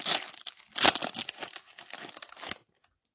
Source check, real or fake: real